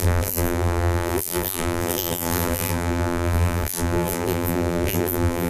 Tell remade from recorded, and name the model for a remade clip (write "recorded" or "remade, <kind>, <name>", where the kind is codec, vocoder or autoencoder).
remade, vocoder, BigVGAN v2